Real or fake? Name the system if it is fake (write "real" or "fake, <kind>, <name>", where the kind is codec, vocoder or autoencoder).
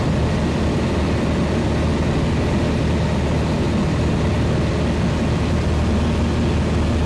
real